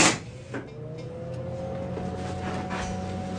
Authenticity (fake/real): real